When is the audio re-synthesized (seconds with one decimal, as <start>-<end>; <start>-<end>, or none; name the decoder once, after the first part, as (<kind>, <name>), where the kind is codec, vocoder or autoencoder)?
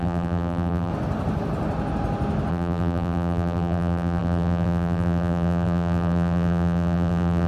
0.0-0.9 (vocoder, BigVGAN v2); 2.5-7.5